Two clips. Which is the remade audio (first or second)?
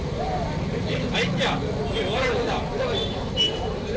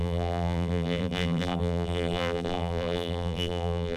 second